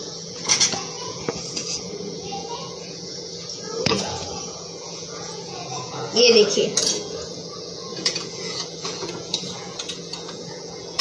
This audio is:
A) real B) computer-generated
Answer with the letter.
B